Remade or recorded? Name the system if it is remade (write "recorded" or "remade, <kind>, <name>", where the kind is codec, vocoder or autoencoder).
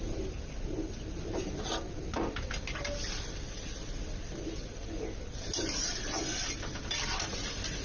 recorded